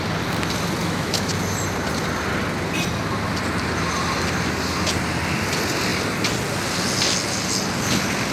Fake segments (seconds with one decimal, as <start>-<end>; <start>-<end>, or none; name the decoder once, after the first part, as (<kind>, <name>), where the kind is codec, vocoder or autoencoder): 0.8-1.3 (autoencoder, DAC-VAE)